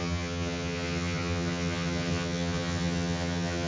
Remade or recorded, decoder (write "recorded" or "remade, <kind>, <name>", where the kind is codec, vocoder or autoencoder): remade, vocoder, HiFi-GAN